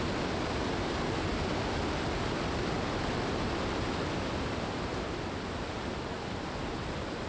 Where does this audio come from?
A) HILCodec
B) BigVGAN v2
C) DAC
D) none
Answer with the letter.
D